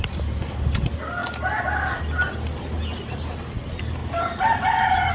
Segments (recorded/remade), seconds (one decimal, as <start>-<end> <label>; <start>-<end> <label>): 0.0-5.1 recorded